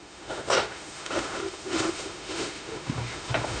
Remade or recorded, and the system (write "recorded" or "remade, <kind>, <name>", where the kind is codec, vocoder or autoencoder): remade, autoencoder, DAC-VAE